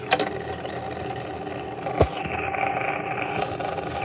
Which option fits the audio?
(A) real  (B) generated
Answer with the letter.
A